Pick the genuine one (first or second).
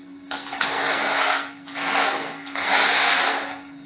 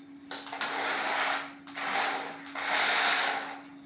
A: second